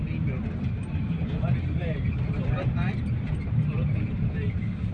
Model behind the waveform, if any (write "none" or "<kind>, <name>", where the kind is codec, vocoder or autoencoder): none